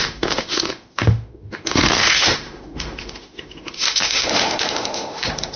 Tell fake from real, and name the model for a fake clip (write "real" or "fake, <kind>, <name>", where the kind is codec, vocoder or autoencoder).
fake, autoencoder, DAC-VAE